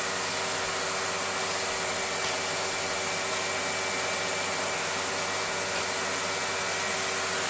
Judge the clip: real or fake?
real